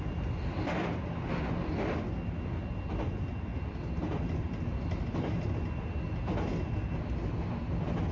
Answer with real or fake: real